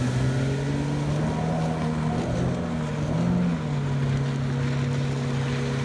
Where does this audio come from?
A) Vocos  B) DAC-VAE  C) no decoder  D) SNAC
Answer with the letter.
C